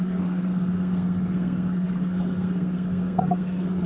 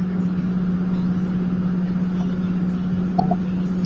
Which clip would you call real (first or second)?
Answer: second